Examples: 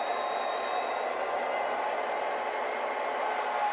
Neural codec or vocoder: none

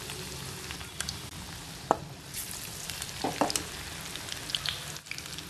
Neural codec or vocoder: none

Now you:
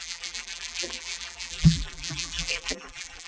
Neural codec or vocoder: vocoder, BigVGAN v2